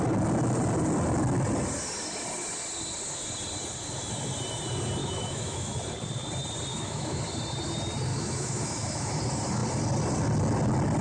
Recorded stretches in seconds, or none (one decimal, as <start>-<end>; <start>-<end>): 0.0-5.0; 5.9-6.7; 7.2-8.1; 9.2-11.0